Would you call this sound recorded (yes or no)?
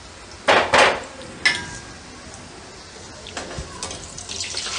yes